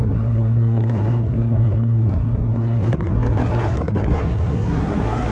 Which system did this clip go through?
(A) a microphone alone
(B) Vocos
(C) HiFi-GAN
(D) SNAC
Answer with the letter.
D